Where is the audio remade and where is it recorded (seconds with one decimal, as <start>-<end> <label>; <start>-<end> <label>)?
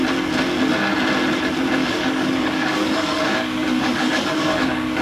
0.0-1.8 recorded; 1.8-5.0 remade